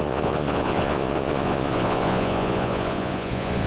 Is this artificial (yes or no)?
yes